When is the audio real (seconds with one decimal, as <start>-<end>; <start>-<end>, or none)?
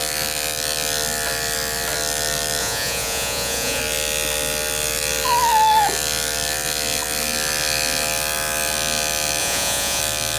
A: 0.0-2.6; 3.8-9.4; 10.0-10.4